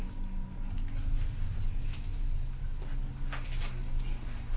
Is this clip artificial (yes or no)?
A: no